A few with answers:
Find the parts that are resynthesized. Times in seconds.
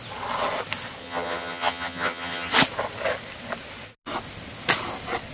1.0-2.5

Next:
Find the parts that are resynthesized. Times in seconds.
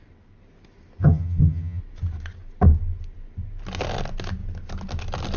1.0-1.8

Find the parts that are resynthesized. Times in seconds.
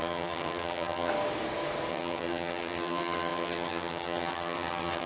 0.0-1.1; 1.9-5.1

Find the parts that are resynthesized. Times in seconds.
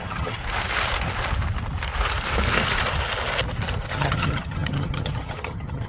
0.0-0.4; 3.9-5.9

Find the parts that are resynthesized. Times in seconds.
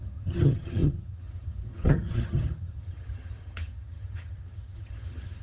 0.0-5.4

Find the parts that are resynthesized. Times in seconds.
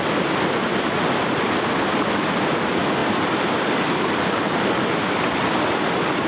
none